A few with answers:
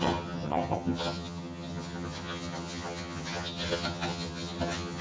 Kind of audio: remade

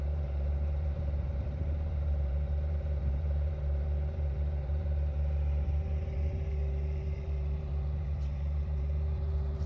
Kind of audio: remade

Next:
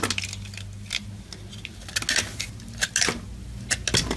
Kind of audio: recorded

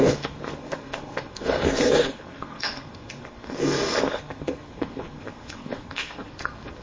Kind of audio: remade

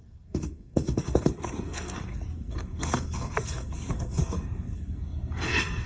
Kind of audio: remade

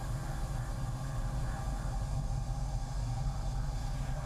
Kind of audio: recorded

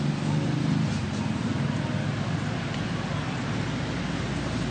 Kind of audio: recorded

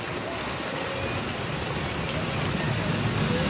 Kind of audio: recorded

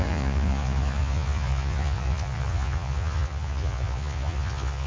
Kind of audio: remade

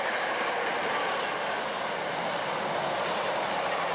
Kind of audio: recorded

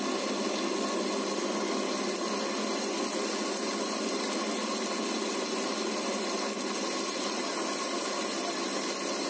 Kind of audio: recorded